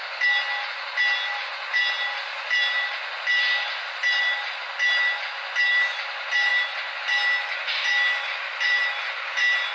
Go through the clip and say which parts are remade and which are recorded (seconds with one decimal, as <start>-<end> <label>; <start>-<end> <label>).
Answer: 0.0-9.7 recorded